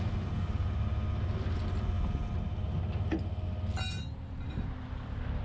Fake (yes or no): no